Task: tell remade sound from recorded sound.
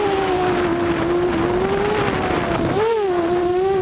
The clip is recorded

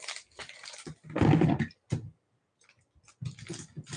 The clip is recorded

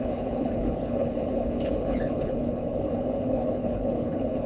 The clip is remade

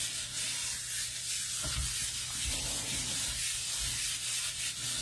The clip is recorded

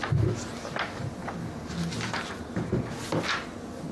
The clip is recorded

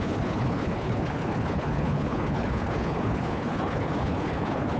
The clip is remade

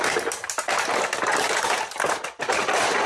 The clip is recorded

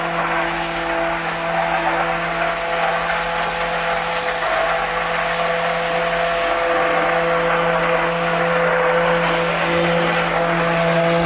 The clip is recorded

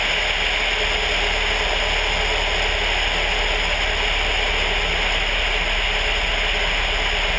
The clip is recorded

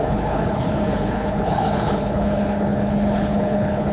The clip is remade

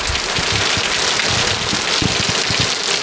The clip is recorded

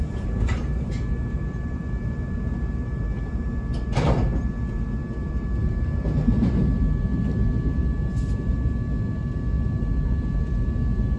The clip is recorded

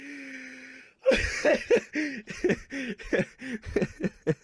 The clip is recorded